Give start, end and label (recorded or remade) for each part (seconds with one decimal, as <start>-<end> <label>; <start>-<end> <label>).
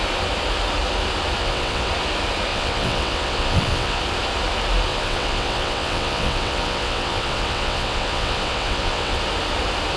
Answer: 0.0-1.4 recorded; 1.4-1.9 remade; 1.9-2.5 recorded; 2.5-4.0 remade; 4.0-4.9 recorded; 4.9-9.2 remade; 9.2-10.0 recorded